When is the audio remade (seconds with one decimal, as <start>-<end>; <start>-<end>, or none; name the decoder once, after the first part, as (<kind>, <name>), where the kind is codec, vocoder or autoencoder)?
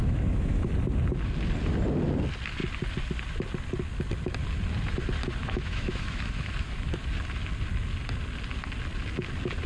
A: 0.0-0.7 (autoencoder, DAC-VAE); 5.4-7.0